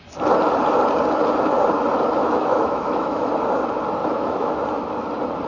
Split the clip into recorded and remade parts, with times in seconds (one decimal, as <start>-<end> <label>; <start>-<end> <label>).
0.0-2.2 recorded; 2.2-3.3 remade; 3.3-4.0 recorded; 4.0-4.6 remade; 4.6-5.5 recorded